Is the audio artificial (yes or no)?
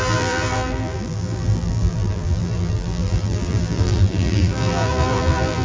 yes